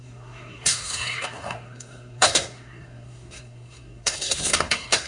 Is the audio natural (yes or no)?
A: no